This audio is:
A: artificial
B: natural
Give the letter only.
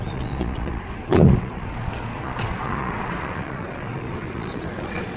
A